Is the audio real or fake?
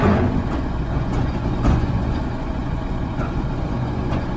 fake